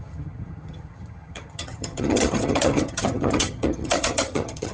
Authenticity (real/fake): fake